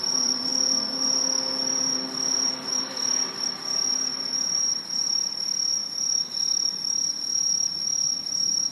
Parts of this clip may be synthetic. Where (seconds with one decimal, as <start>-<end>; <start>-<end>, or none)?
0.0-0.5; 2.7-8.7